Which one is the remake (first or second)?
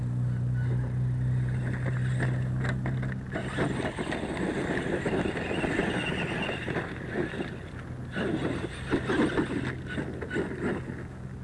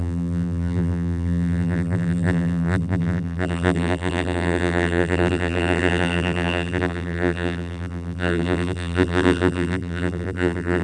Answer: second